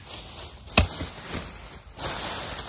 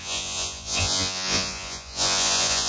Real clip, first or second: first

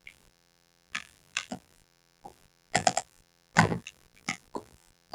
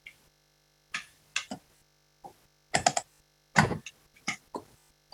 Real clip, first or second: second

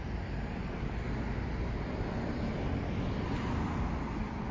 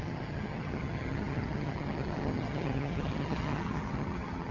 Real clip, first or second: first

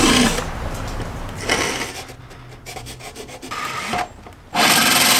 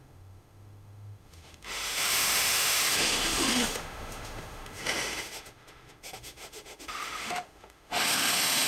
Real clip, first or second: first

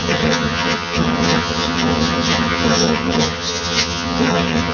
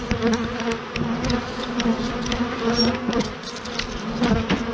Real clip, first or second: second